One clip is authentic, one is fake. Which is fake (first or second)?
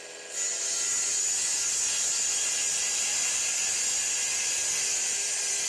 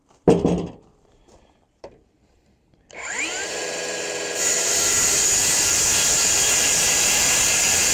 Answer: second